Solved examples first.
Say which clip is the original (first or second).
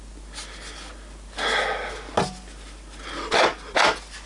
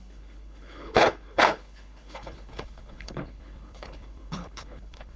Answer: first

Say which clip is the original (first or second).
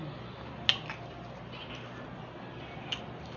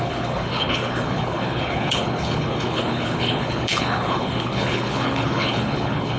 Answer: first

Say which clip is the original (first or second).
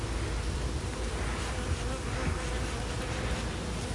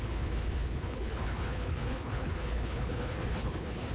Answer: first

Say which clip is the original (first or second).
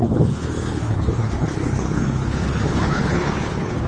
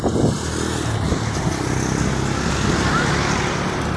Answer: second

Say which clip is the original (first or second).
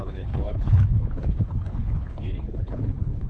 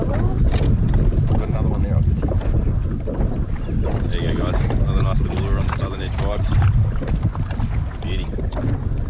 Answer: second